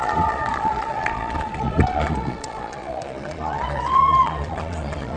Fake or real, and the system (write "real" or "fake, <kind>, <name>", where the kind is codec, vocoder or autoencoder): fake, vocoder, Vocos